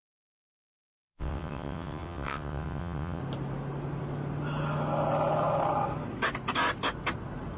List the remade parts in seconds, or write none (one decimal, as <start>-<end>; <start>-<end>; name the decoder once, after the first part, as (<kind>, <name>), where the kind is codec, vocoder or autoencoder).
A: 0.0-3.2 (vocoder, WaveNeXt)